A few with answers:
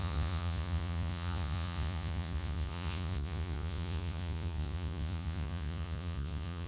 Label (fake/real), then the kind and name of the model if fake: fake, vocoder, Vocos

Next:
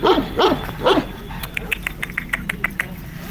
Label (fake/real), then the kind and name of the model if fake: fake, vocoder, BigVGAN v2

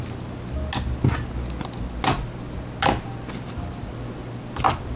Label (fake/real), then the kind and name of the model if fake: real